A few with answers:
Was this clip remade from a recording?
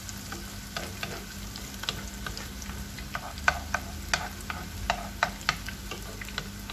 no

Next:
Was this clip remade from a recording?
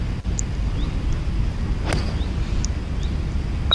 no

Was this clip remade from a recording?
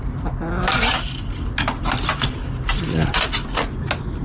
no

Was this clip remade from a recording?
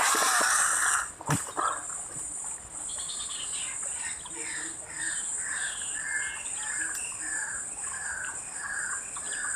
no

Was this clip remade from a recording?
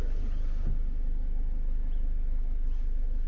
no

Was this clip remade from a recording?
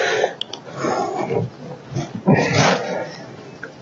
no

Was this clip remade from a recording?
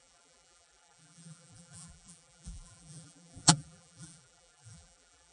yes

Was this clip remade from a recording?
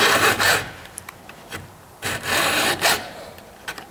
yes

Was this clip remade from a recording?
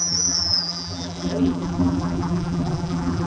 yes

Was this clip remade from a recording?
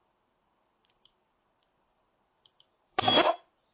yes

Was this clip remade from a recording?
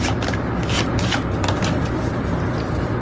no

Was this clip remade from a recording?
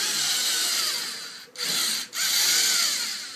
no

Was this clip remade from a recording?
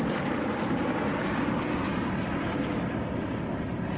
yes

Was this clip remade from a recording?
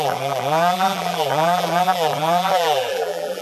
yes